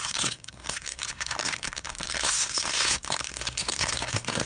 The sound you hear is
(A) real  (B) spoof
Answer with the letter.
B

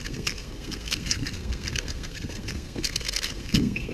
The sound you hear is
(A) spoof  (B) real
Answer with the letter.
A